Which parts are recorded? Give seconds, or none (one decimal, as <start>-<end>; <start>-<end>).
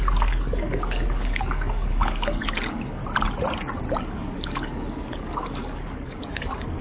3.0-4.0